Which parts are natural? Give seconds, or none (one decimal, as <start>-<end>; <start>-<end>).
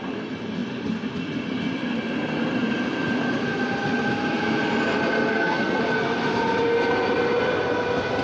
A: 0.0-5.3; 5.8-8.2